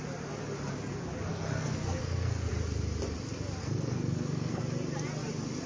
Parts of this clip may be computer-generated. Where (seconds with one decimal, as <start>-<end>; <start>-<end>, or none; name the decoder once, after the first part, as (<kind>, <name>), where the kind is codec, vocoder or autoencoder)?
1.3-2.5 (codec, SNAC); 3.6-4.6